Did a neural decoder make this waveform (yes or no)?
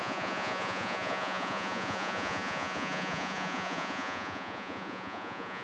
yes